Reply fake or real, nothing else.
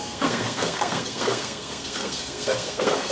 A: fake